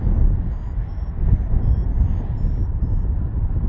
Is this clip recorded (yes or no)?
yes